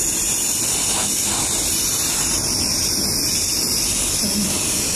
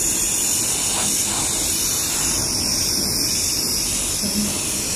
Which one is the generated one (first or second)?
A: first